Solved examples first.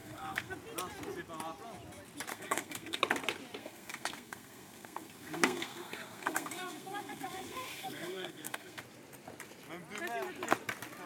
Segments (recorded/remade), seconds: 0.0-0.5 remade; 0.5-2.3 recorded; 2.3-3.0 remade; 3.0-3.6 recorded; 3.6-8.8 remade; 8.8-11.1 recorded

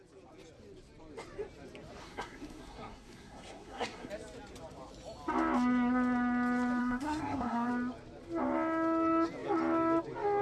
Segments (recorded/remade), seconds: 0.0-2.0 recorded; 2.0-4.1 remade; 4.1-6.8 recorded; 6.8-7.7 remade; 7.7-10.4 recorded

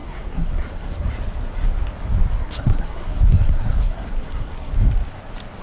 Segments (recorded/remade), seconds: 0.0-1.1 remade; 1.1-2.4 recorded; 2.4-4.7 remade; 4.7-5.6 recorded